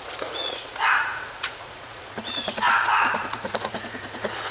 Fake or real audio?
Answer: fake